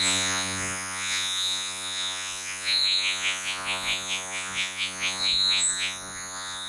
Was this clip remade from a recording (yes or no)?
yes